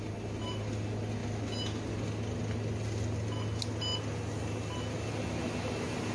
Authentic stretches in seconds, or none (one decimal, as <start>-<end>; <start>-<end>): 0.0-6.1